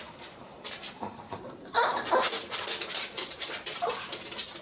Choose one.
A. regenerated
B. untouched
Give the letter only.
A